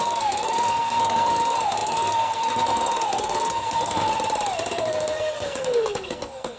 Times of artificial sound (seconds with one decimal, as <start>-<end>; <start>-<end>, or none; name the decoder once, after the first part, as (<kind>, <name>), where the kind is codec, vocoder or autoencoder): 0.0-4.1 (codec, SNAC); 4.7-6.6